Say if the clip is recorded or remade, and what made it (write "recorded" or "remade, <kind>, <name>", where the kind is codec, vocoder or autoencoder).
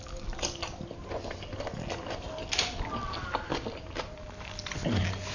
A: recorded